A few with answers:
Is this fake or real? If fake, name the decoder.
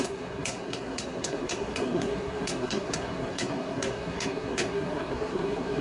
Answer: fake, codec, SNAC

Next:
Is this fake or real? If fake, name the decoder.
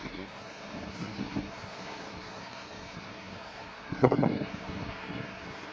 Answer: fake, codec, SNAC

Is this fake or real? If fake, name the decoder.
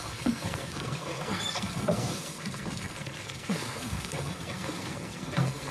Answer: fake, codec, SNAC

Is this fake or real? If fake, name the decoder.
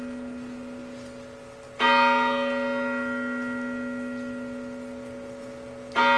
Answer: real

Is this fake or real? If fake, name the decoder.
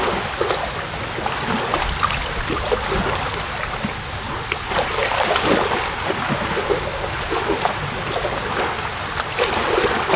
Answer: real